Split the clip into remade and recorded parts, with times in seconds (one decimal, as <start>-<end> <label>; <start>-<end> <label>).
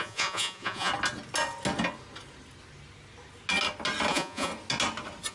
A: 0.0-0.9 remade; 0.9-4.1 recorded; 4.1-4.5 remade; 4.5-5.3 recorded